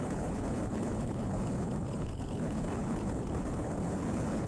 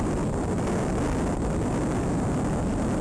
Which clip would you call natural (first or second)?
second